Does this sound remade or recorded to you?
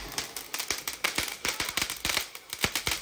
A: recorded